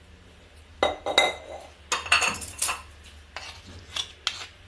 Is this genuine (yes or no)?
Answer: yes